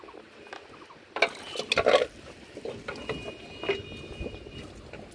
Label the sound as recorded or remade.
recorded